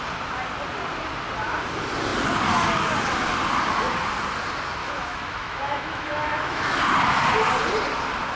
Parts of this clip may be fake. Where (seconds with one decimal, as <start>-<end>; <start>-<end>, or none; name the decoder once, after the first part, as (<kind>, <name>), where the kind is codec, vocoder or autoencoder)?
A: 4.8-6.8 (autoencoder, DAC-VAE)